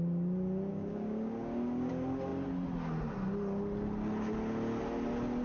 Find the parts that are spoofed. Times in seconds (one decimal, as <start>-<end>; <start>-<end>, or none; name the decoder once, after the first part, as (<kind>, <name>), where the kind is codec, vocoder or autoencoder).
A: 0.7-1.9 (codec, DAC)